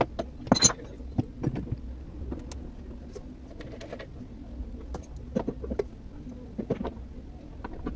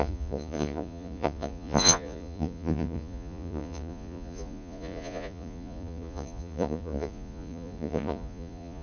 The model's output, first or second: second